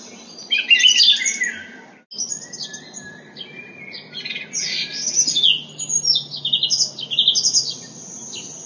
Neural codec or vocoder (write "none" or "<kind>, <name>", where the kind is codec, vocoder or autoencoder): none